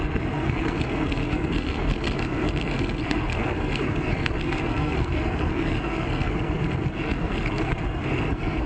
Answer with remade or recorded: remade